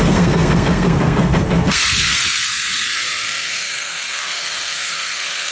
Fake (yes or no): yes